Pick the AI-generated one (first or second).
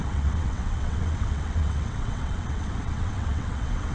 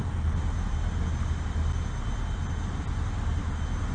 first